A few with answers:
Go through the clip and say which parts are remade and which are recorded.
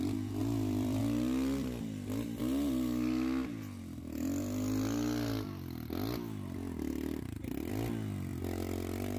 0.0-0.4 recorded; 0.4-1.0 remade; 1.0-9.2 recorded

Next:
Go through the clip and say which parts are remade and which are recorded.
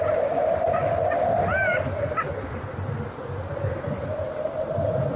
0.0-5.2 recorded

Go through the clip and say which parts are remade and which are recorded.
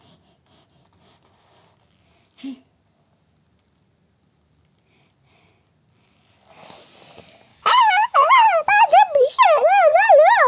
0.0-7.5 recorded; 7.5-8.3 remade; 8.3-10.5 recorded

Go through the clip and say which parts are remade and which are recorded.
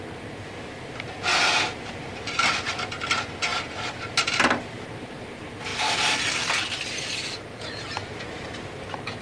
0.0-9.2 recorded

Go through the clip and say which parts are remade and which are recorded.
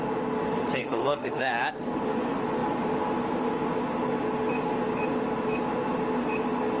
0.0-0.8 recorded; 0.8-1.5 remade; 1.5-6.8 recorded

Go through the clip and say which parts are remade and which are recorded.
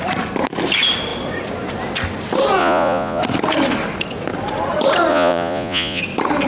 0.0-2.6 recorded; 2.6-3.2 remade; 3.2-5.1 recorded; 5.1-6.0 remade; 6.0-6.5 recorded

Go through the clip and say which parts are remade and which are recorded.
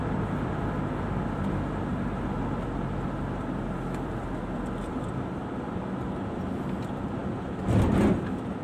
0.0-8.6 recorded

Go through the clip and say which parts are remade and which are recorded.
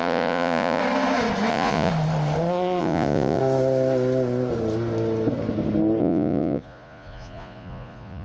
0.0-0.8 remade; 0.8-1.5 recorded; 1.5-1.9 remade; 1.9-2.8 recorded; 2.8-3.4 remade; 3.4-6.0 recorded; 6.0-8.2 remade